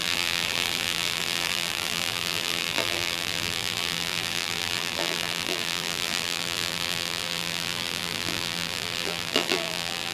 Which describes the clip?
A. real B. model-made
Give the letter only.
B